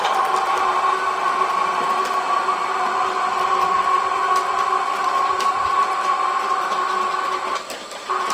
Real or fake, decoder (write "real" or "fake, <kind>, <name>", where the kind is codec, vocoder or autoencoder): real